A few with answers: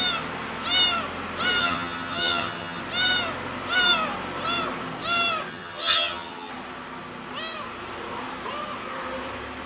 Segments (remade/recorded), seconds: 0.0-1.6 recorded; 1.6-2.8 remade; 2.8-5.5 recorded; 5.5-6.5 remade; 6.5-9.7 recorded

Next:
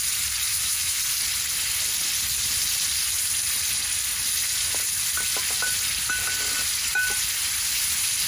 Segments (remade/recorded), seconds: 0.0-0.5 recorded; 0.5-1.0 remade; 1.0-8.3 recorded

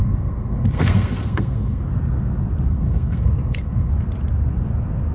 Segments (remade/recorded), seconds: 0.0-1.8 remade; 1.8-2.7 recorded; 2.7-3.9 remade; 3.9-5.1 recorded